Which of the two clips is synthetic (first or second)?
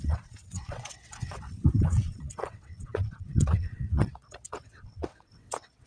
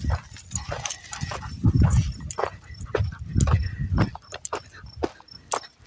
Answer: first